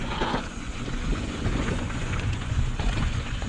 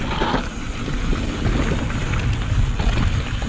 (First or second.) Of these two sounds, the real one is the second